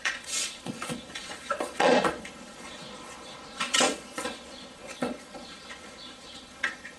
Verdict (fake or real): fake